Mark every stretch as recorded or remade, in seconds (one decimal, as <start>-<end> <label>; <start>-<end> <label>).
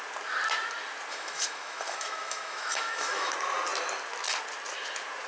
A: 0.0-1.1 recorded; 1.1-3.3 remade; 3.3-5.3 recorded